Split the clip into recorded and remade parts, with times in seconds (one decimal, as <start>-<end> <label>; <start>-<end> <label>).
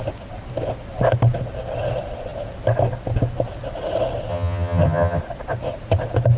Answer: 0.0-4.3 recorded; 4.3-5.2 remade; 5.2-6.4 recorded